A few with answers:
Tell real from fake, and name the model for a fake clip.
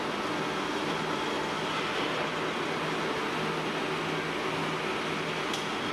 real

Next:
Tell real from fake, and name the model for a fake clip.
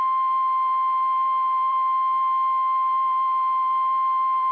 fake, vocoder, BigVGAN v2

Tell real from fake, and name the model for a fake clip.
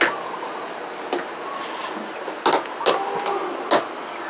real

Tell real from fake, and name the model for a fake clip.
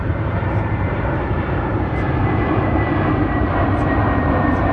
fake, vocoder, BigVGAN v2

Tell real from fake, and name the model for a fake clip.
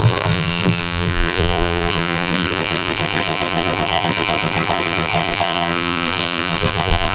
fake, vocoder, BigVGAN v2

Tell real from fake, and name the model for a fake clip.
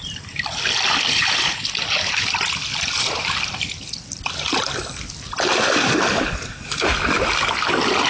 fake, vocoder, BigVGAN v2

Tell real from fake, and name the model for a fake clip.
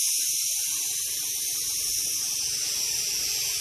real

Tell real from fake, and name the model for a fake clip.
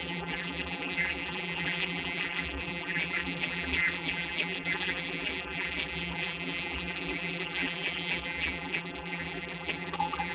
fake, vocoder, BigVGAN v2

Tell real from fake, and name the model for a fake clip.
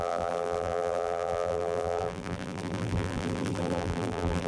fake, vocoder, BigVGAN v2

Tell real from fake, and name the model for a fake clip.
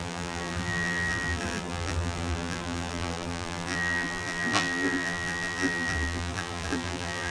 fake, vocoder, BigVGAN v2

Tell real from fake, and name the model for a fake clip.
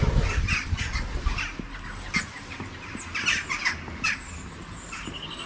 real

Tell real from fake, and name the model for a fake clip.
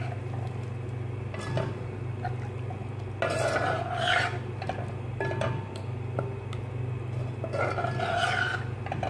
real